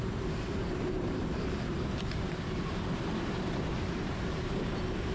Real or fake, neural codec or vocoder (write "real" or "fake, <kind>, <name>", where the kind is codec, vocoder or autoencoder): fake, vocoder, BigVGAN v2